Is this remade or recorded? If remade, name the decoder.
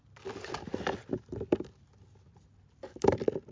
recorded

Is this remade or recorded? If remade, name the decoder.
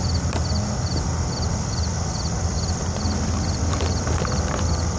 recorded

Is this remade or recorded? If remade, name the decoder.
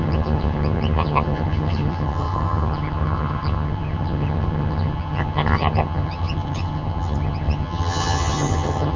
remade, vocoder, HiFi-GAN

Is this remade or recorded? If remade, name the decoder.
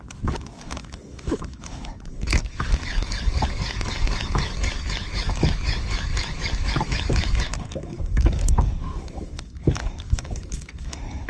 remade, codec, DAC